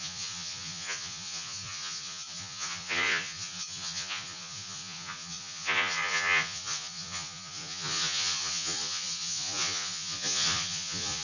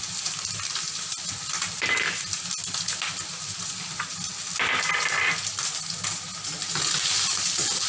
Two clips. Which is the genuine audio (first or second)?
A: second